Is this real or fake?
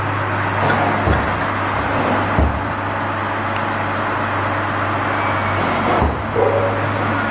real